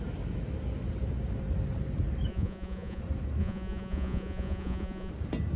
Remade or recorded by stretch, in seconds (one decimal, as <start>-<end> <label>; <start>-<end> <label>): 0.0-2.3 recorded; 2.3-3.0 remade; 3.0-3.4 recorded; 3.4-5.1 remade; 5.1-5.6 recorded